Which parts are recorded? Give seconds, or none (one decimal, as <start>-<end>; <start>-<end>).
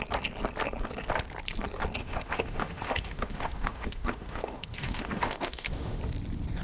0.0-2.0; 6.0-6.6